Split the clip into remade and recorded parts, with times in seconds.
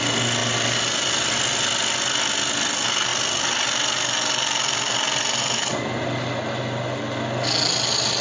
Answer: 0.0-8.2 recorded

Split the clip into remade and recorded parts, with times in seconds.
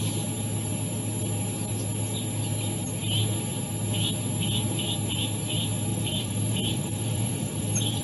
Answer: 0.0-5.9 recorded; 5.9-8.0 remade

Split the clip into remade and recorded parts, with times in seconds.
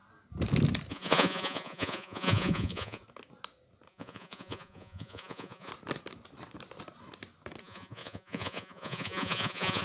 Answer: 0.0-0.9 recorded; 0.9-3.0 remade; 3.0-3.9 recorded; 3.9-5.7 remade; 5.7-7.6 recorded; 7.6-9.8 remade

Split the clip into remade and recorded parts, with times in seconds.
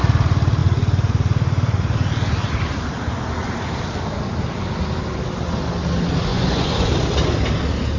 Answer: 0.0-6.3 recorded; 6.3-6.9 remade; 6.9-8.0 recorded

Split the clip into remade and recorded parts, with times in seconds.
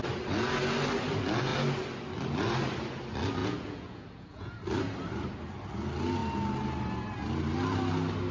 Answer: 0.0-3.4 recorded; 3.4-4.6 remade; 4.6-8.3 recorded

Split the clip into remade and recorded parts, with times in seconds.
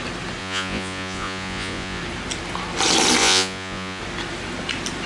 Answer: 0.0-0.4 recorded; 0.4-2.0 remade; 2.0-3.2 recorded; 3.2-4.0 remade; 4.0-5.1 recorded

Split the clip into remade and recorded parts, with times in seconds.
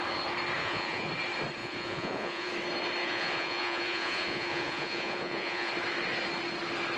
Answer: 0.0-0.6 recorded; 0.6-1.1 remade; 1.1-1.6 recorded; 1.6-2.5 remade; 2.5-3.0 recorded; 3.0-5.7 remade; 5.7-7.0 recorded